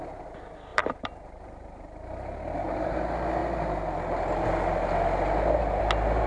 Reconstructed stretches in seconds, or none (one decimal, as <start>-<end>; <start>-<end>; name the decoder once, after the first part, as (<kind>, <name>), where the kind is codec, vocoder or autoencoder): 0.7-3.0 (vocoder, BigVGAN v2)